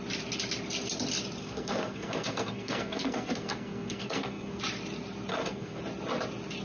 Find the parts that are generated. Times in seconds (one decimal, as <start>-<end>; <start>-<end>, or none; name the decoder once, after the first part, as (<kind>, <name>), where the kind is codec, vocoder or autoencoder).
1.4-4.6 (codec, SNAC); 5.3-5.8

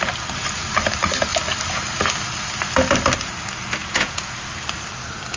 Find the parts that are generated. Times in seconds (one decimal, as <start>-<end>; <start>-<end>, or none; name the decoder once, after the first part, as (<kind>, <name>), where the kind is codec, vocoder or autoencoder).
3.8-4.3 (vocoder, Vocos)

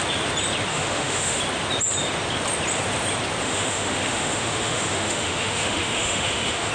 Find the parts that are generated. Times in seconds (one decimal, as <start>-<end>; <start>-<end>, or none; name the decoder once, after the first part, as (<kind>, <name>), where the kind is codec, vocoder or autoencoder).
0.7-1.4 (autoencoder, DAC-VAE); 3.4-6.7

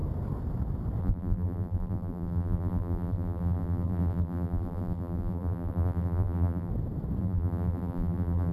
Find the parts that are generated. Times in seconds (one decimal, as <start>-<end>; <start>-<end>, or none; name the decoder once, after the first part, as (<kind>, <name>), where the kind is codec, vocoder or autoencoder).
1.0-6.7 (vocoder, BigVGAN v2); 7.2-8.5